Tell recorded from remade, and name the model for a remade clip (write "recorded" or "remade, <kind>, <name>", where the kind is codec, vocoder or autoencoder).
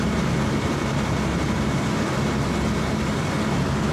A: recorded